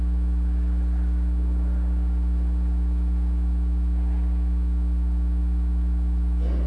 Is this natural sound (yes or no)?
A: yes